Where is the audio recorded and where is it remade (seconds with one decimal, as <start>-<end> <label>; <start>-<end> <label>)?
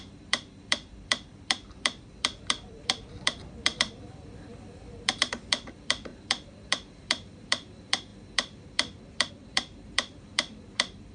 0.0-11.1 remade